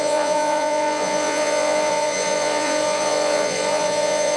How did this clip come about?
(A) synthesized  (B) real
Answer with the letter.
A